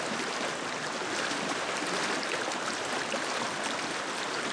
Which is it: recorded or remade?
recorded